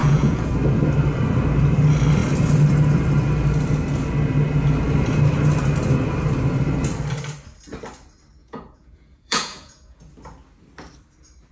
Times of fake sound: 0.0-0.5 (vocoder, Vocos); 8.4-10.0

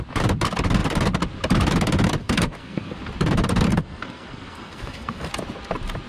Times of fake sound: 2.2-3.0 (codec, SNAC); 3.7-5.3

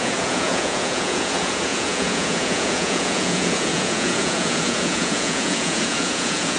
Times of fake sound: 0.0-6.6 (vocoder, Vocos)

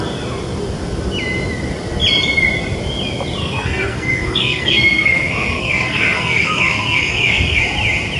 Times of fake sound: 3.4-7.6 (codec, SNAC)

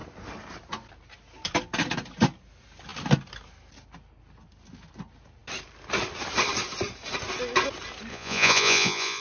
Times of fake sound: 8.1-9.2 (vocoder, Vocos)

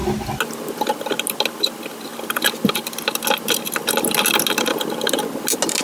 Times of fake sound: none

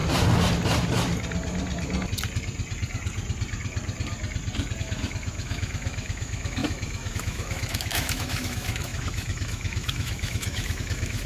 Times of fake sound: 4.8-11.3 (autoencoder, DAC-VAE)

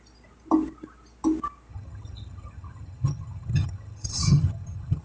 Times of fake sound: 1.7-5.0 (vocoder, HiFi-GAN)